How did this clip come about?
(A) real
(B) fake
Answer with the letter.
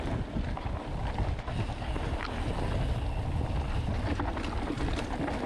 A